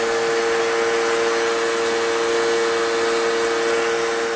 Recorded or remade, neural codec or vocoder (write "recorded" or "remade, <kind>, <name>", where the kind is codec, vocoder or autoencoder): recorded